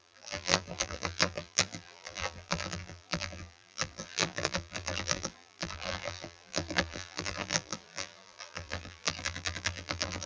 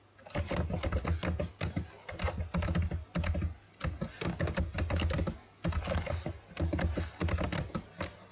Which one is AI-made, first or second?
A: first